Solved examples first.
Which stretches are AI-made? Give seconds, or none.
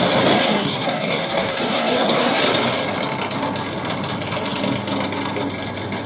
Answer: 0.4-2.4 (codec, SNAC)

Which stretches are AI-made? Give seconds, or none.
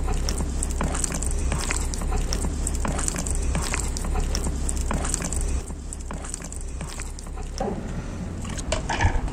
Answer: 1.4-4.2 (vocoder, BigVGAN v2); 4.8-7.0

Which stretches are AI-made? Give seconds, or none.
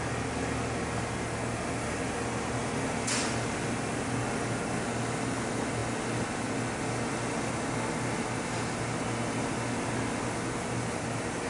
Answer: none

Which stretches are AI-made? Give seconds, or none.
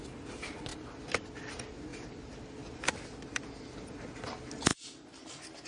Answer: none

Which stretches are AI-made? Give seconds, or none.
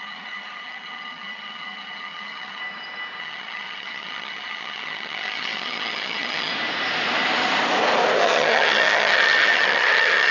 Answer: 0.0-2.6 (vocoder, HiFi-GAN); 3.2-6.5; 8.2-10.3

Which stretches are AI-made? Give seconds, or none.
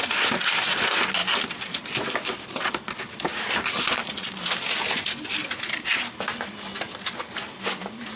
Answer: none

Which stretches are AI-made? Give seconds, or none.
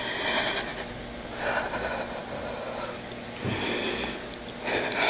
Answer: none